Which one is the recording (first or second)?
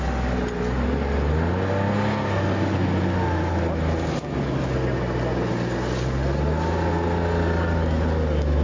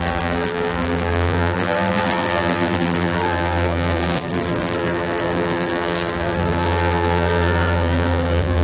first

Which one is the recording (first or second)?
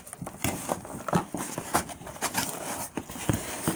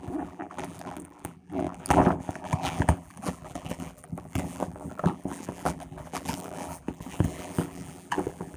first